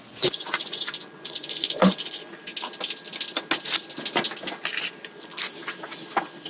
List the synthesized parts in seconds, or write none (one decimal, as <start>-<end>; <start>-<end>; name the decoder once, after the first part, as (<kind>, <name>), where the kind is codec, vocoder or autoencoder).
0.0-2.5 (vocoder, Vocos)